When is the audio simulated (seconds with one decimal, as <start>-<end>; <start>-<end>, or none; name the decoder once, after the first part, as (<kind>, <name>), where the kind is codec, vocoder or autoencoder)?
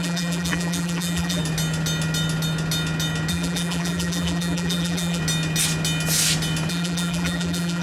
0.0-1.4 (vocoder, BigVGAN v2); 3.3-5.2; 6.7-7.8